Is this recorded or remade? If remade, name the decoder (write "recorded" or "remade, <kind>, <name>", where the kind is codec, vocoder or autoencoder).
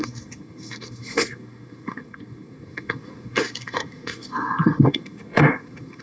remade, codec, SNAC